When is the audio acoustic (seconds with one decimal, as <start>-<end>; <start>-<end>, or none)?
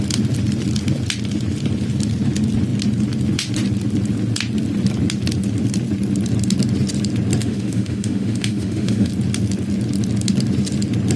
0.0-7.4; 9.1-11.2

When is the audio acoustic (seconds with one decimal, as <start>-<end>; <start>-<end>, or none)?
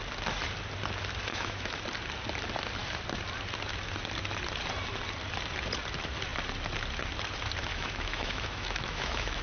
0.0-1.3; 1.8-7.7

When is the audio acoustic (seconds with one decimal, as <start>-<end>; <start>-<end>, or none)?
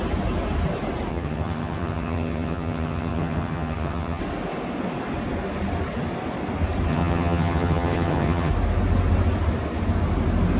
0.0-1.1; 4.2-6.9; 8.5-10.6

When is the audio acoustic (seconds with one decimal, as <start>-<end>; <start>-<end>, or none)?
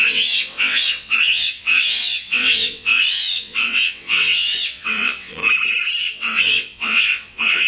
5.4-6.0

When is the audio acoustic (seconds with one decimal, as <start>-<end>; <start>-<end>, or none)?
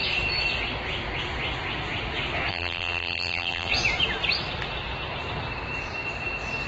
0.0-2.5; 3.7-6.7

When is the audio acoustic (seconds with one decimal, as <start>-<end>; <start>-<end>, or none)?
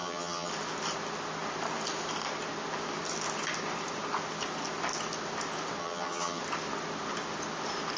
0.5-5.8; 6.4-8.0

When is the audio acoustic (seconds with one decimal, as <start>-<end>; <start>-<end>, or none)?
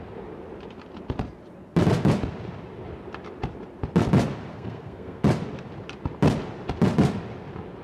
0.0-4.5; 5.2-7.8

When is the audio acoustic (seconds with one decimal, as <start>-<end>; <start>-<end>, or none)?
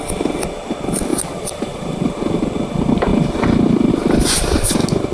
0.0-1.1; 2.0-5.1